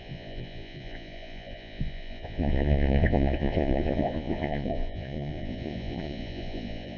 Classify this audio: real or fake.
fake